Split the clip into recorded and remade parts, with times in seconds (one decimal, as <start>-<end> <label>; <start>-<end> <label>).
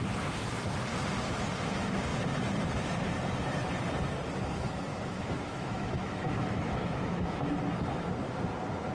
0.0-4.9 recorded; 4.9-7.5 remade; 7.5-8.9 recorded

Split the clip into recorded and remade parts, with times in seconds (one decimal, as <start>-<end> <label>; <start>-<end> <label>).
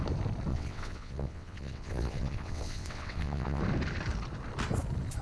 0.0-0.5 recorded; 0.5-3.6 remade; 3.6-5.2 recorded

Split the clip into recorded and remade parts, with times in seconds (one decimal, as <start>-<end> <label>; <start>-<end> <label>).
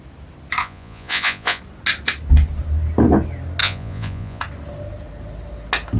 0.0-0.6 recorded; 0.6-1.6 remade; 1.6-3.6 recorded; 3.6-4.4 remade; 4.4-6.0 recorded